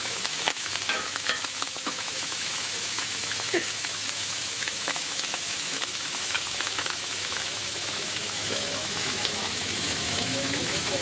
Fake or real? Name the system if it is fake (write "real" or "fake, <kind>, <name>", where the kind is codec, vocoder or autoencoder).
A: fake, autoencoder, DAC-VAE